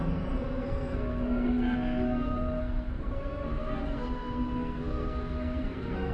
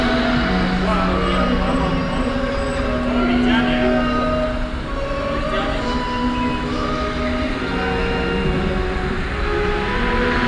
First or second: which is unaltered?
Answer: second